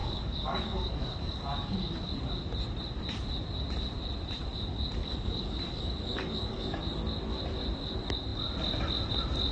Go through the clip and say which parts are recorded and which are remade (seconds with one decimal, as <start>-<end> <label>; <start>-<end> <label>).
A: 0.0-2.1 remade; 2.1-5.0 recorded; 5.0-6.8 remade; 6.8-9.5 recorded